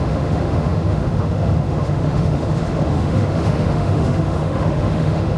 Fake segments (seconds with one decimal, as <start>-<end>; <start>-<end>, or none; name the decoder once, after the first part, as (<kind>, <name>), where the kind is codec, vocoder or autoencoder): 0.0-5.4 (autoencoder, DAC-VAE)